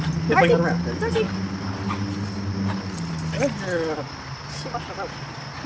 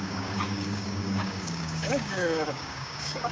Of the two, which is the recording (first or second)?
first